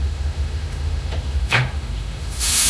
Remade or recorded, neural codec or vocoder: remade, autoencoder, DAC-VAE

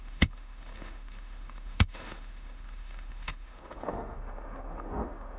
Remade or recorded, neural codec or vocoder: remade, autoencoder, DAC-VAE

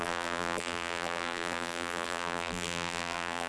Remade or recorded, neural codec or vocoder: remade, vocoder, BigVGAN v2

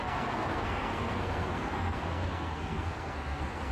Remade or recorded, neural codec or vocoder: remade, codec, SNAC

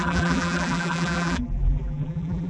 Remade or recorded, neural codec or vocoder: remade, vocoder, BigVGAN v2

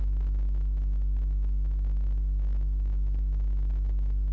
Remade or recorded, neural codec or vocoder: recorded